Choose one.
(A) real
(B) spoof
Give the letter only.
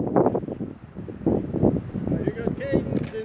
A